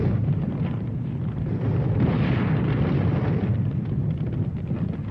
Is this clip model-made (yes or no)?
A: no